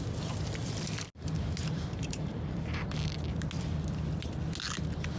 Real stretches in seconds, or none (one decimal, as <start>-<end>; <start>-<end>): 0.0-1.6; 3.1-5.2